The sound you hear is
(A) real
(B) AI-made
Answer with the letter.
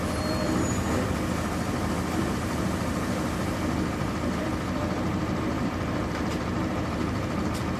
B